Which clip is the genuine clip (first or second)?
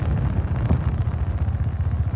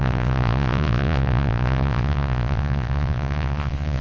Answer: first